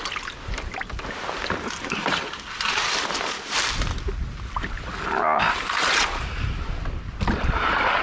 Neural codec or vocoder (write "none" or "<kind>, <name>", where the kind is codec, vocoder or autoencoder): none